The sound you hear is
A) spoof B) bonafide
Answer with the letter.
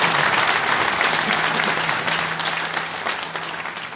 B